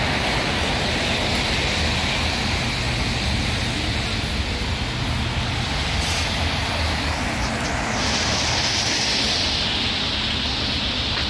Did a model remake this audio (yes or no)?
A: no